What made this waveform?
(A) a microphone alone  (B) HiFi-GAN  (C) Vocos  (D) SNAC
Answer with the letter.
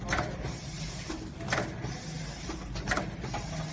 A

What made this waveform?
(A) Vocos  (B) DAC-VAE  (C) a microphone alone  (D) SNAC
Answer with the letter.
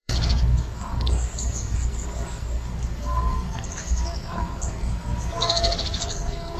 D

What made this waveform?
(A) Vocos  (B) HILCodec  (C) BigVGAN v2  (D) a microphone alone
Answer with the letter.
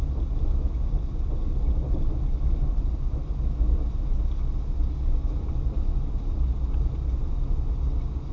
D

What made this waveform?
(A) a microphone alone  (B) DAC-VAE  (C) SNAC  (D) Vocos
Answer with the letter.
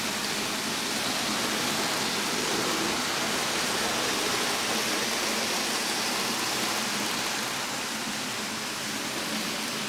A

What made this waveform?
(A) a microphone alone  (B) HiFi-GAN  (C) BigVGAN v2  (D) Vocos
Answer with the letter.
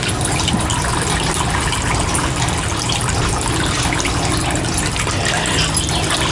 A